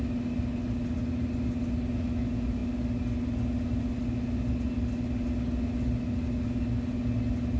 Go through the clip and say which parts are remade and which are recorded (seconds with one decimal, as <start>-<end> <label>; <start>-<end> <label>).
0.0-7.6 recorded